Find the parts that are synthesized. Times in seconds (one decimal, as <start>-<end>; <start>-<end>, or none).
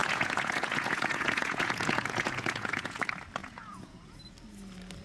0.0-3.0; 3.4-4.2